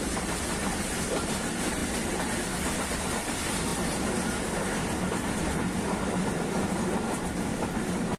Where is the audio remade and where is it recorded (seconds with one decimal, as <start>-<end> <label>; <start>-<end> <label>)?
0.0-8.2 recorded